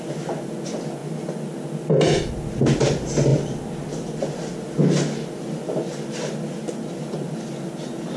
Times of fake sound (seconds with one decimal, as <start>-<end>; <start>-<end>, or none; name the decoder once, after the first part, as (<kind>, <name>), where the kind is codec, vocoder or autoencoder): none